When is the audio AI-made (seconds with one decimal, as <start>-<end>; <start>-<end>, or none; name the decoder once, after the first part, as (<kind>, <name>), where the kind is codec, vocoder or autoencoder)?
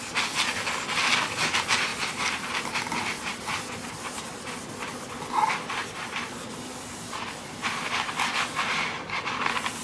1.9-2.6 (vocoder, BigVGAN v2); 3.8-4.6